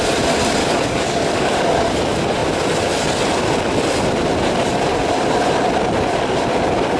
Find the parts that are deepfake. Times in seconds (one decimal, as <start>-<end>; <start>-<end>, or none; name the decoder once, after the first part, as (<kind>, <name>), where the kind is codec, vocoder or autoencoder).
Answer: 0.6-2.0 (codec, DAC)

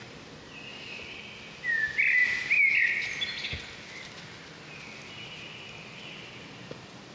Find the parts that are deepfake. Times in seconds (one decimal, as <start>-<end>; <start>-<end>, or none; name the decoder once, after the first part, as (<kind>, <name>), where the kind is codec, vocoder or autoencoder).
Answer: none

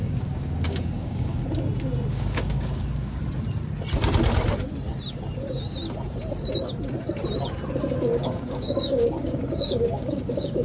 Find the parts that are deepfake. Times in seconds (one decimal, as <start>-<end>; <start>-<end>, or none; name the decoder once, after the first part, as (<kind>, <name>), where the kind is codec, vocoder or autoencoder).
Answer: 0.0-1.4 (codec, DAC); 2.1-3.2; 8.0-10.6

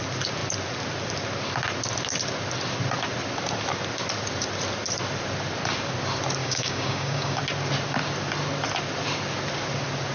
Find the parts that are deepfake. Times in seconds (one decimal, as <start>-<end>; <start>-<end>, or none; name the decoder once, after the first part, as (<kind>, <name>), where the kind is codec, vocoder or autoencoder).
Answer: 6.4-7.4 (codec, DAC)

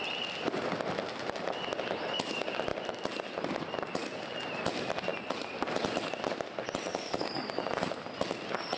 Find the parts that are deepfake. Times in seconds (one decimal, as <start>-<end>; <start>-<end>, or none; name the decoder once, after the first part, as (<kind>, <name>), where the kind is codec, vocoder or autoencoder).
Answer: 6.9-7.6 (codec, DAC)

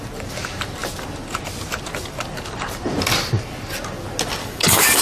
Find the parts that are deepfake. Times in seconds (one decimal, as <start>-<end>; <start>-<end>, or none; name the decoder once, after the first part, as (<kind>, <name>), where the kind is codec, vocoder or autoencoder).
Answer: 4.4-5.0 (codec, DAC)